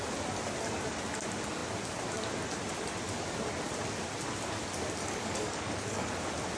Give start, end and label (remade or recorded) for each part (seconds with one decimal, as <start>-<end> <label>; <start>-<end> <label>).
0.0-5.0 recorded; 5.0-6.1 remade; 6.1-6.6 recorded